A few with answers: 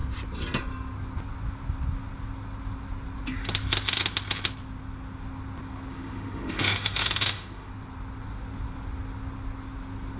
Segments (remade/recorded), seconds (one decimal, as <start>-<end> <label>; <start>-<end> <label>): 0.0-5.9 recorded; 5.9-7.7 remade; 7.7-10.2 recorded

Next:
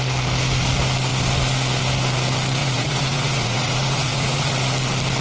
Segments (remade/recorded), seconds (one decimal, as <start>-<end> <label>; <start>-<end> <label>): 0.0-2.6 recorded; 2.6-4.5 remade; 4.5-5.2 recorded

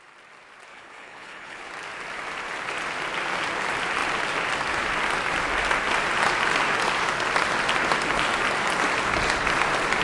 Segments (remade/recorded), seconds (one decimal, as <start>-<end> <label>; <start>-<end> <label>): 0.0-0.7 recorded; 0.7-1.7 remade; 1.7-10.0 recorded

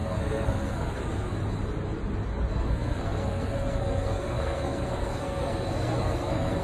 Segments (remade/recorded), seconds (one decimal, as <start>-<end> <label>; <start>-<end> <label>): 0.0-1.4 remade; 1.4-2.5 recorded; 2.5-6.6 remade